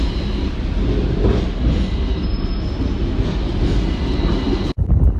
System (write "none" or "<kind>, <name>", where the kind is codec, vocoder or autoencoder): none